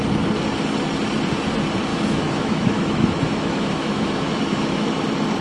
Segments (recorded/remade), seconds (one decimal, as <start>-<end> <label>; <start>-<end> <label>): 0.0-1.9 recorded; 1.9-4.9 remade; 4.9-5.4 recorded